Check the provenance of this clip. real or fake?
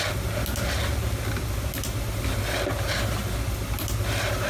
real